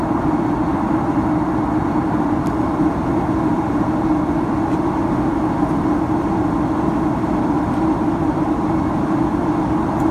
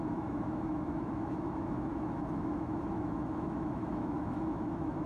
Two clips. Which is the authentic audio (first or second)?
first